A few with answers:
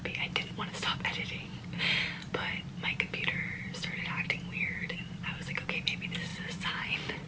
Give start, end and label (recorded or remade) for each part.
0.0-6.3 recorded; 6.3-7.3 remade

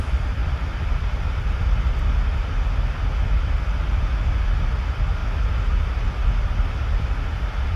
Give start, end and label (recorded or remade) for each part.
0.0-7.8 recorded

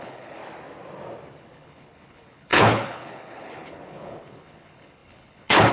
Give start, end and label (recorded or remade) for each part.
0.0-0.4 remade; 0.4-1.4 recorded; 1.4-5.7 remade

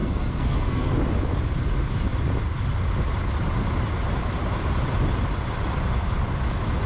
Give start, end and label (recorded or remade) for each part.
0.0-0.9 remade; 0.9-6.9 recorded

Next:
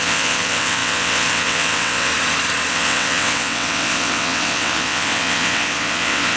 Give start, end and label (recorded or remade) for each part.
0.0-2.1 remade; 2.1-2.7 recorded; 2.7-6.4 remade